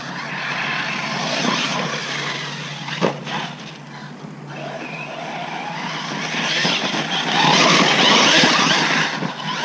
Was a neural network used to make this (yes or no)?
no